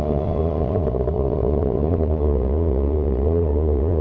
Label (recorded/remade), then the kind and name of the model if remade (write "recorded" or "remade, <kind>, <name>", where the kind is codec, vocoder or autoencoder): remade, vocoder, Vocos